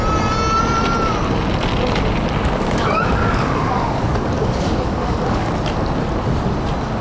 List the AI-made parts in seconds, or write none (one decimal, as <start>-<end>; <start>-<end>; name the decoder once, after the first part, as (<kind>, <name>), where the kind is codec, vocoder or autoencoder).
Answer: 2.4-5.5 (codec, DAC)